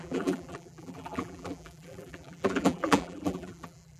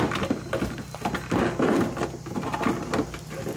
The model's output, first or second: first